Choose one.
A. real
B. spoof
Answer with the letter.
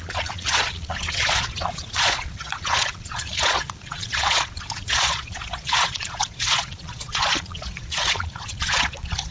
B